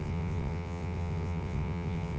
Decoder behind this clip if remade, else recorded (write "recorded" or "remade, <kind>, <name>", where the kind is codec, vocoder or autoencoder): remade, vocoder, WaveNeXt